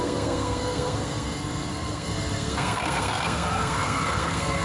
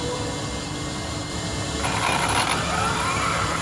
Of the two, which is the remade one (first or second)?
first